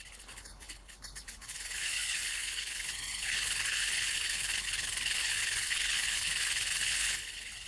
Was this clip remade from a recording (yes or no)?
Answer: yes